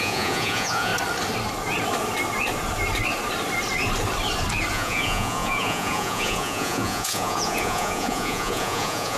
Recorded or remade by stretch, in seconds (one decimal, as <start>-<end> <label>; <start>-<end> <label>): 0.0-0.9 remade; 0.9-4.7 recorded; 4.7-9.2 remade